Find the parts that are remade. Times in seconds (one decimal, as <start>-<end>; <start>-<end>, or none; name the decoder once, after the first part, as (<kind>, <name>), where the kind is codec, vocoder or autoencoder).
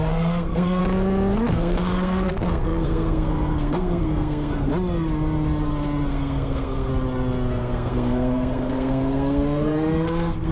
0.0-0.8 (codec, SNAC); 1.5-4.7; 6.1-6.9; 7.6-10.5